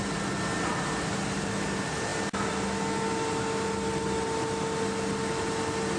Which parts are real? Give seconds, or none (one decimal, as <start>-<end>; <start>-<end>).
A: 0.0-6.0